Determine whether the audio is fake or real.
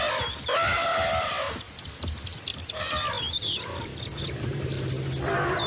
fake